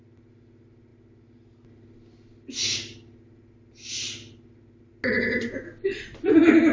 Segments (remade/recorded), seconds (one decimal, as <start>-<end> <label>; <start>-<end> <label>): 0.0-6.7 recorded